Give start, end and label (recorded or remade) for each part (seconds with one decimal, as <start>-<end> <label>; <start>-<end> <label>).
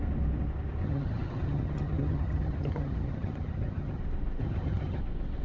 0.0-0.8 recorded; 0.8-4.0 remade; 4.0-4.4 recorded; 4.4-5.0 remade; 5.0-5.4 recorded